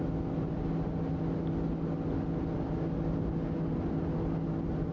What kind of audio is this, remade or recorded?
recorded